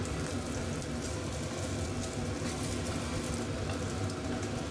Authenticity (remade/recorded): recorded